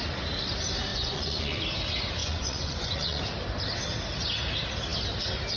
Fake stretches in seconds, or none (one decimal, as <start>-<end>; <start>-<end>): 0.9-1.6; 2.2-3.2

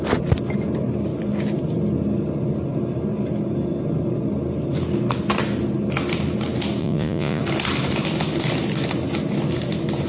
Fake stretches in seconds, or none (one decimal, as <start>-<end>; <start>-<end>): 6.8-7.4

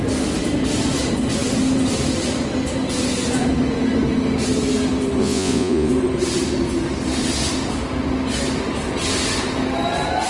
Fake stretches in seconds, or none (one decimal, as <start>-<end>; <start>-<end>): 5.2-5.9

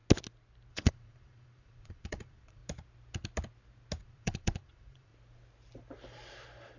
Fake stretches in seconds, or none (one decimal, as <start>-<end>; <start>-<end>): 0.7-2.6; 4.0-5.1

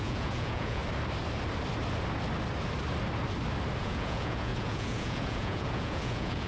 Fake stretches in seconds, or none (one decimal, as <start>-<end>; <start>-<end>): 0.0-0.8; 3.8-6.5

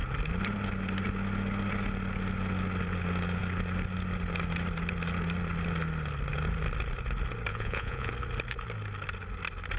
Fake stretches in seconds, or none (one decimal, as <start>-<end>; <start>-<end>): 7.5-8.1

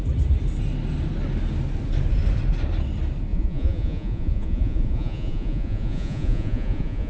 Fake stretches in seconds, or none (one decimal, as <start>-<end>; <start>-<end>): 3.3-7.1

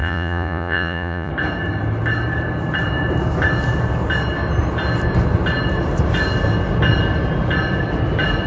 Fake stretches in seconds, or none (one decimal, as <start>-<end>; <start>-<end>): 0.0-1.3